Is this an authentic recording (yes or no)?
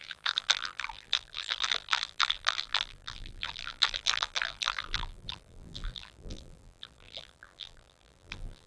no